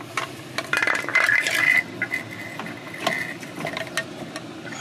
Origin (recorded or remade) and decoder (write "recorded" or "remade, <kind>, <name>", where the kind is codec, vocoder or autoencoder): recorded